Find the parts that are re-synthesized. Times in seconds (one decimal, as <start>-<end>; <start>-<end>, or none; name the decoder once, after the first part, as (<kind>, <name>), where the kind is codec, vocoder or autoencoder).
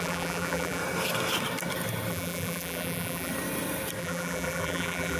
0.0-0.8 (vocoder, BigVGAN v2); 2.1-3.3; 4.0-5.2